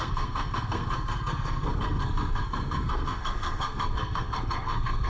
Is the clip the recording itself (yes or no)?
no